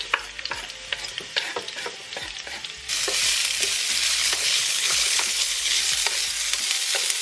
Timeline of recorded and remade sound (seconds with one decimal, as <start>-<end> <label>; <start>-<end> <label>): 0.0-4.2 recorded; 4.2-5.8 remade; 5.8-7.2 recorded